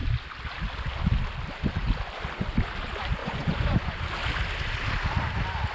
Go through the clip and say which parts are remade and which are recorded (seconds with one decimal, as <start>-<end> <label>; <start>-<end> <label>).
0.0-3.2 recorded; 3.2-4.0 remade; 4.0-5.7 recorded